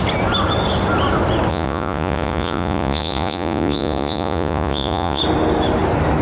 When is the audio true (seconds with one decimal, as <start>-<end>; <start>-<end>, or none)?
0.0-1.5; 5.2-6.2